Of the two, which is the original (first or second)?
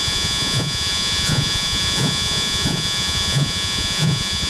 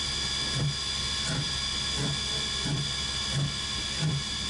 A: second